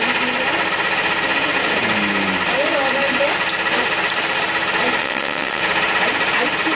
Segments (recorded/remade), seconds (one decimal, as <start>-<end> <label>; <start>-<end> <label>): 0.0-5.0 recorded; 5.0-5.6 remade; 5.6-6.7 recorded